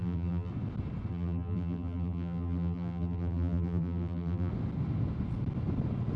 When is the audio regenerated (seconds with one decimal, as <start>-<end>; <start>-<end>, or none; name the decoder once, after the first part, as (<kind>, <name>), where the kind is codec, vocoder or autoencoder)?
0.0-0.5 (vocoder, BigVGAN v2); 1.1-4.5